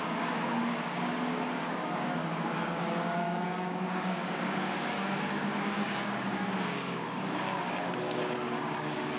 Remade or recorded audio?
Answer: remade